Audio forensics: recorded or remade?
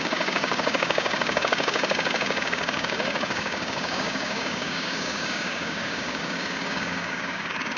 remade